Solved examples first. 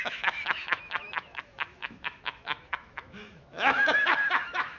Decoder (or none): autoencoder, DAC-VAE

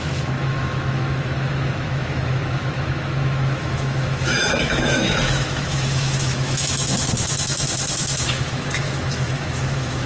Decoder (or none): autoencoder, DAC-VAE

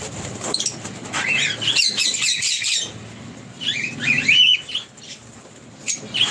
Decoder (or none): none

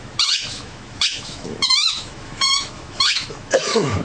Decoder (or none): autoencoder, DAC-VAE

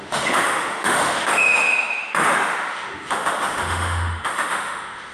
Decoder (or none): autoencoder, DAC-VAE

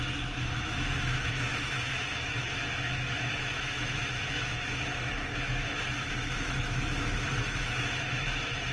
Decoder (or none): autoencoder, DAC-VAE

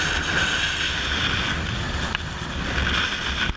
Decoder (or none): none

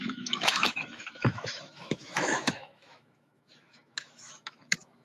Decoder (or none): autoencoder, DAC-VAE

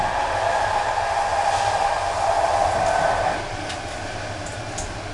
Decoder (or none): none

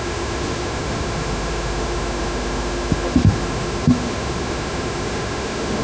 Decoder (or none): autoencoder, DAC-VAE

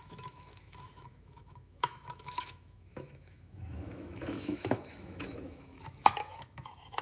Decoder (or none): autoencoder, DAC-VAE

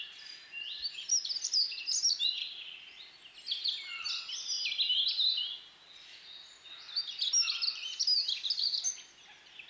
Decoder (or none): none